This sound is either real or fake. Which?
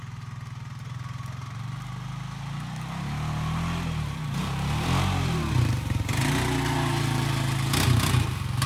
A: real